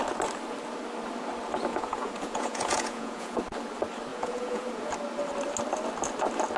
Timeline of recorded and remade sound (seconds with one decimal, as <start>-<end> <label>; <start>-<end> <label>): 0.0-1.7 recorded; 1.7-3.4 remade; 3.4-4.1 recorded; 4.1-4.9 remade; 4.9-6.6 recorded